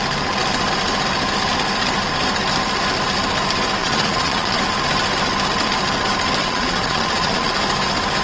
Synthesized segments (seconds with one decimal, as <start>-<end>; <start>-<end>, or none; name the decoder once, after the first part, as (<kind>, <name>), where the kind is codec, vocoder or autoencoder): 3.8-4.6 (vocoder, Vocos); 6.4-7.5